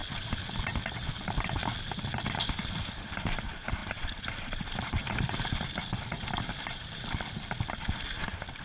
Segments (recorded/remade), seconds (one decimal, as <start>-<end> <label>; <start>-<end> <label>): 0.0-3.8 recorded; 3.8-7.6 remade; 7.6-8.6 recorded